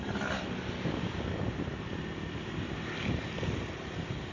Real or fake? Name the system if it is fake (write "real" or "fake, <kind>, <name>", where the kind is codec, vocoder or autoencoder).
real